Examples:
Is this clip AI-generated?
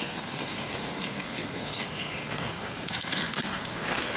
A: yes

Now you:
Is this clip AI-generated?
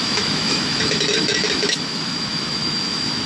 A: yes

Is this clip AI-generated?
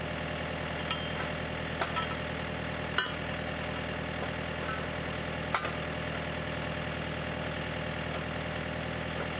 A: no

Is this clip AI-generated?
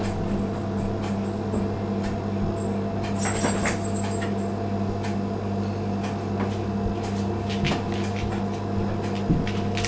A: no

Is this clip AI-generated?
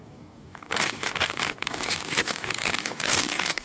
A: yes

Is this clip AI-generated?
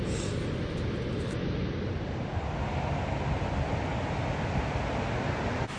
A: no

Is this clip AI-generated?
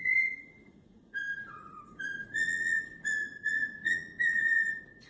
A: yes